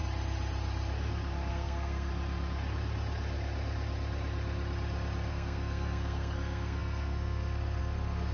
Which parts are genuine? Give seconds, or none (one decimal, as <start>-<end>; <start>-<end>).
0.0-1.5; 2.1-5.3